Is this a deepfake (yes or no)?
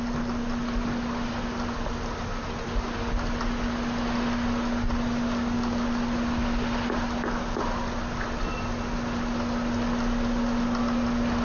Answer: no